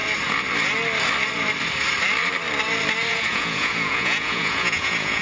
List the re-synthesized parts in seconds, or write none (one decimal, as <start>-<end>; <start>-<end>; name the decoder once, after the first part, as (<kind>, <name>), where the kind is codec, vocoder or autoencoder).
3.1-5.2 (vocoder, Vocos)

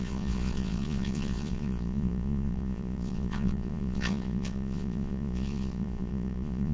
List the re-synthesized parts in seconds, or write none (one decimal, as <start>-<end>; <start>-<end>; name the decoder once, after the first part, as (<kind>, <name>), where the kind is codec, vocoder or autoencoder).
0.0-6.7 (vocoder, Vocos)

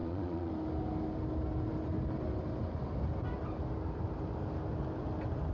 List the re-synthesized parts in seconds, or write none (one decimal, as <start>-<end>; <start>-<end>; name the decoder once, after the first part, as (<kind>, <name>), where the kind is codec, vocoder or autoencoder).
0.0-0.5 (vocoder, Vocos)

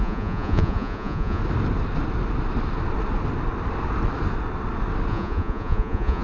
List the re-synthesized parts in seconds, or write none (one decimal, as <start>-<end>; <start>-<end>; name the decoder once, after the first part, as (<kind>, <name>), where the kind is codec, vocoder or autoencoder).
0.0-1.4 (vocoder, Vocos); 5.1-6.2

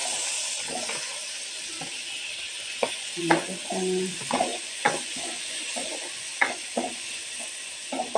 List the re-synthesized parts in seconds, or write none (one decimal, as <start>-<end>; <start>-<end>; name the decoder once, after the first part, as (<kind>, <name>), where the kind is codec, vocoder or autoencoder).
2.6-8.2 (vocoder, Vocos)

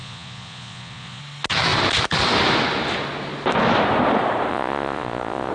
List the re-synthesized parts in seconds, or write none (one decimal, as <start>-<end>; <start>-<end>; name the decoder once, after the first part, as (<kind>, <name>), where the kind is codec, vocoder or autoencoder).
0.0-1.2 (vocoder, Vocos); 4.5-5.5

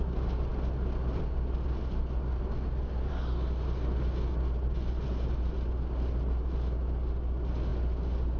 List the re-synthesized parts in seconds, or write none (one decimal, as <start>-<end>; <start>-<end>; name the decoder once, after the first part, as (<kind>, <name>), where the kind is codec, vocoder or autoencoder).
none